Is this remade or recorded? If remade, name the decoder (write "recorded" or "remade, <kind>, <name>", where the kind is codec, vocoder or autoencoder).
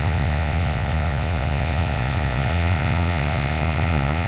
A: remade, vocoder, Vocos